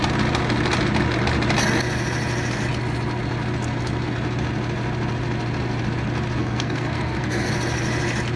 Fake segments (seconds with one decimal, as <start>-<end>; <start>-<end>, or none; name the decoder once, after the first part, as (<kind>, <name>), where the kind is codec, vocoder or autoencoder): 6.4-7.5 (codec, SNAC)